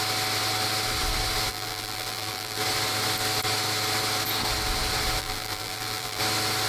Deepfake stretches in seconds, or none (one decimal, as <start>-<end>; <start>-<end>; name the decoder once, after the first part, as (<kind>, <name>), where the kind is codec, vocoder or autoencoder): 1.5-2.6 (vocoder, BigVGAN v2); 5.2-6.2